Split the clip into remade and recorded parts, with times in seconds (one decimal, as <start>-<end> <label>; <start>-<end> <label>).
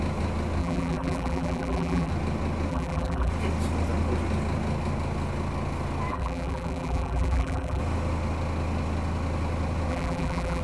0.0-0.6 recorded; 0.6-2.1 remade; 2.1-2.7 recorded; 2.7-3.3 remade; 3.3-6.1 recorded; 6.1-7.8 remade; 7.8-9.9 recorded; 9.9-10.6 remade